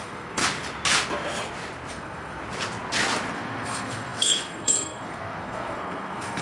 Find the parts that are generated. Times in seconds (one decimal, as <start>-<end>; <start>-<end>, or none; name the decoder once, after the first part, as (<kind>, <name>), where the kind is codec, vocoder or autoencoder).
0.0-0.4 (codec, SNAC); 1.9-2.4; 3.3-6.4